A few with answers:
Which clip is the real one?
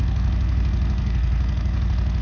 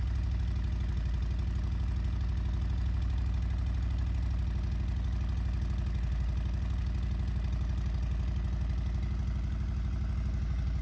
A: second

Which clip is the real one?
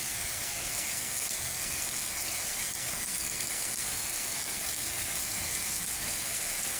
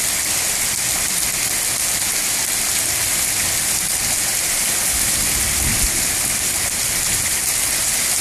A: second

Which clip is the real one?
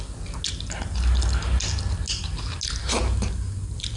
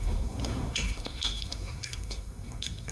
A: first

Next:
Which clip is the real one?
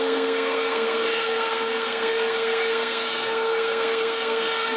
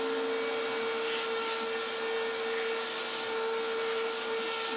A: second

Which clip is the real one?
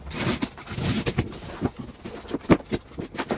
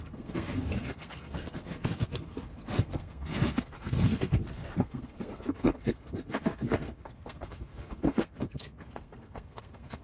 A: first